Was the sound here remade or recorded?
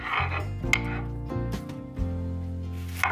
recorded